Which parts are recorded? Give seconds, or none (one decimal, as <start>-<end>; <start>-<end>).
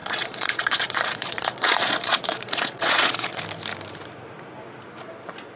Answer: 3.4-5.6